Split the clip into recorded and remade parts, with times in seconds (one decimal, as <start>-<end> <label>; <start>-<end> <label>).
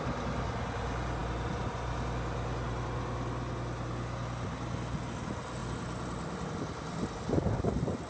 0.0-8.1 recorded